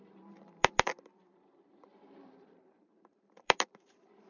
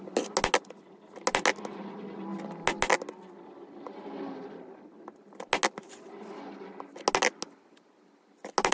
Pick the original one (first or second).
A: second